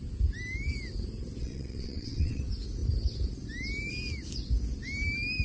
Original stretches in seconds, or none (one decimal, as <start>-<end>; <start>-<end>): 0.0-1.4; 2.4-5.4